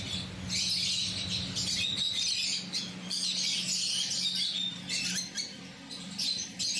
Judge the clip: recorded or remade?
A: recorded